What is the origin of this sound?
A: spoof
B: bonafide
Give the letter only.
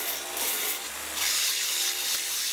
A